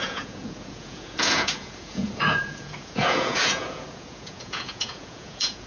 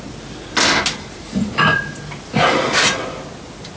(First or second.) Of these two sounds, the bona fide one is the second